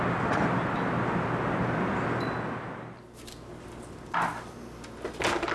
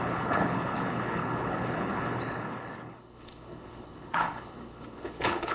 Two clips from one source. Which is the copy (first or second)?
second